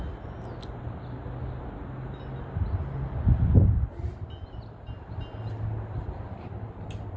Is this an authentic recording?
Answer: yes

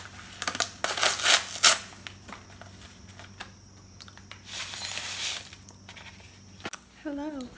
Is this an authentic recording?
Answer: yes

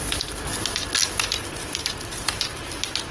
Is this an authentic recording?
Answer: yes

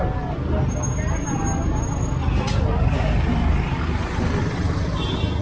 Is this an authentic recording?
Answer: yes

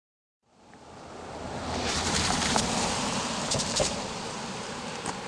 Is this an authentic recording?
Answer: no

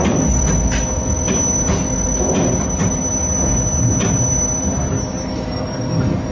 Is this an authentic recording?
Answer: yes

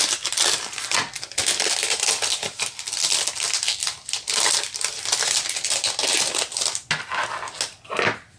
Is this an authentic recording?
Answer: yes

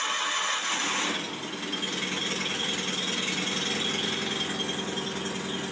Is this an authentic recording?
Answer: yes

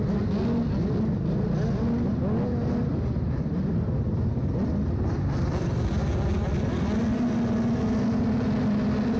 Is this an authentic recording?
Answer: yes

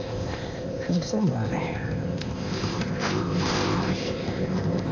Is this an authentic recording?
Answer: no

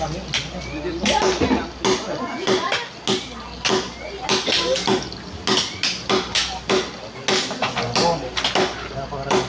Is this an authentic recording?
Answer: yes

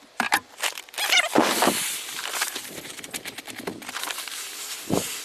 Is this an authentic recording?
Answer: yes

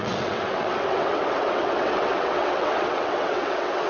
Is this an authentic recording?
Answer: no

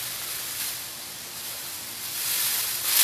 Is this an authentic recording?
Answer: yes